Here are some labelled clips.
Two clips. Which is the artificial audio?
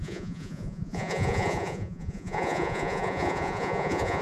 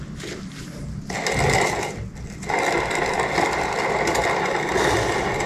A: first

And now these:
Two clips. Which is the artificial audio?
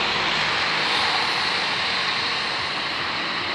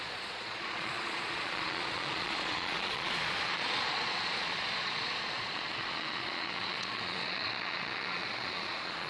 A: second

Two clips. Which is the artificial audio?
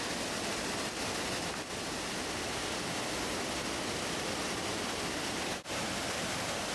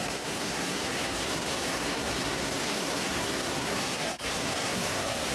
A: second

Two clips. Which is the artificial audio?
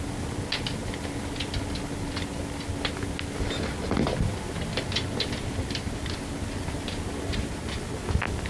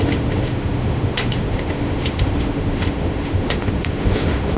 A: second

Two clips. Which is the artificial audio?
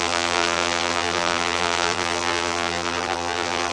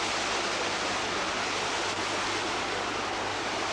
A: first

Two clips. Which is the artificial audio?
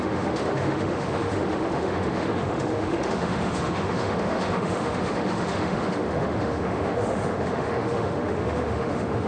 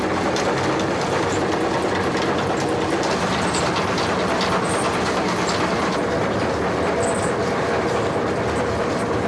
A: first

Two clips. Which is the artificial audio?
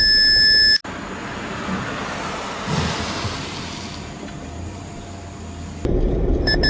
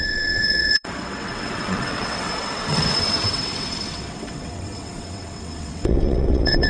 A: second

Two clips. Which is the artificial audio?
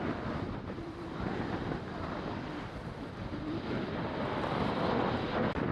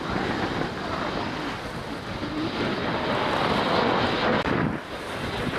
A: first